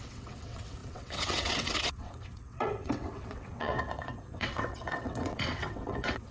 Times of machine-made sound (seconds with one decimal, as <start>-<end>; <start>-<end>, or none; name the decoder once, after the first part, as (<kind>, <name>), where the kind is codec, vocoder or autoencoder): 0.0-6.3 (vocoder, WaveNeXt)

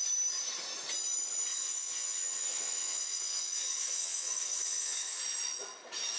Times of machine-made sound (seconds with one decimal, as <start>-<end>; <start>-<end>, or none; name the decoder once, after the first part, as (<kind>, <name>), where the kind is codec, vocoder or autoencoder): 1.5-5.2 (vocoder, WaveNeXt)

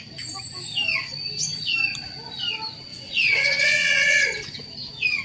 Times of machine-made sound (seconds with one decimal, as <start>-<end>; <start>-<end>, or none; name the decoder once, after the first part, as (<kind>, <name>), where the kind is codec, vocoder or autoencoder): 2.9-4.2 (vocoder, WaveNeXt)

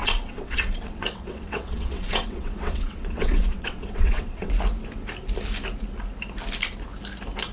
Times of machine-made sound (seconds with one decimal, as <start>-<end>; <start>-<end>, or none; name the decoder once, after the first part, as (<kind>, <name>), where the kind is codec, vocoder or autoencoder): 0.0-4.5 (vocoder, WaveNeXt)